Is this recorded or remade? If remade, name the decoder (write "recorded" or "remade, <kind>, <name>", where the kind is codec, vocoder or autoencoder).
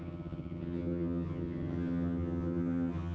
remade, vocoder, HiFi-GAN